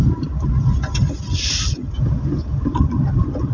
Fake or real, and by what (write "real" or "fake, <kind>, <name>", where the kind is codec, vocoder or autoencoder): real